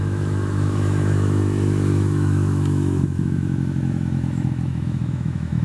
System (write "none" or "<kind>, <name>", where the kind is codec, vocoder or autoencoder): autoencoder, DAC-VAE